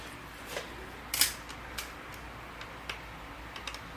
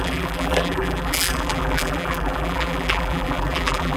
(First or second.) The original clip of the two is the first